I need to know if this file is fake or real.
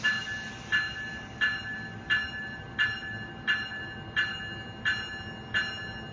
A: real